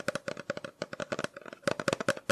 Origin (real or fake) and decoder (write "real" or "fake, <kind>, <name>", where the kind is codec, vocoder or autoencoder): real